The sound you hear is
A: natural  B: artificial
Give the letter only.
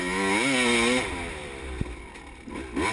A